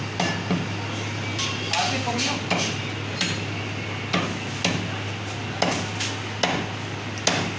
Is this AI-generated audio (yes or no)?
no